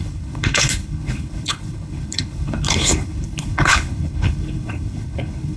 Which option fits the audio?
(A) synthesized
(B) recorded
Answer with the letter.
A